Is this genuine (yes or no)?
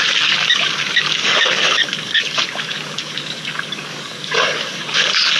no